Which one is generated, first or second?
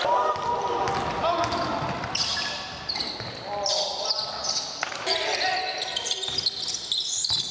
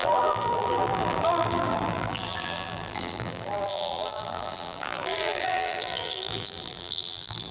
second